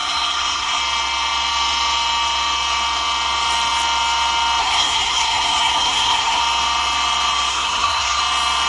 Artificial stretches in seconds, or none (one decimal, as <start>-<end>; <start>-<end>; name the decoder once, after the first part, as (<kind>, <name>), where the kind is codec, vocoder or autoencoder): 0.0-0.8 (codec, SNAC); 4.6-6.4; 7.5-8.2